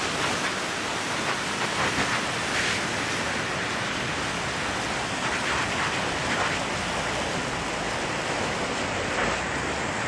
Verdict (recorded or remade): recorded